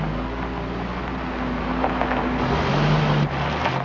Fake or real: real